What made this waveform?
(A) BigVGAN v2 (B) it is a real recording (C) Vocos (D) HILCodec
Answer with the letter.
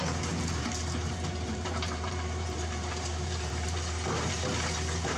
A